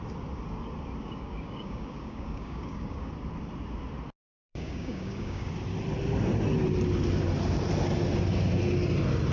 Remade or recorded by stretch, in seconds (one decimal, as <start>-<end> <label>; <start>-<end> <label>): 0.0-1.0 recorded; 1.0-3.1 remade; 3.1-4.4 recorded; 4.4-5.5 remade; 5.5-9.3 recorded